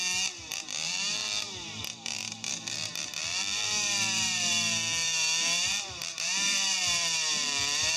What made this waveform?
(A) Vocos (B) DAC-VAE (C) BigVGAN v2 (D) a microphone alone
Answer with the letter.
C